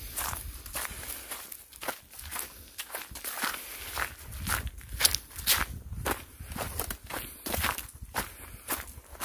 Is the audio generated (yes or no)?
no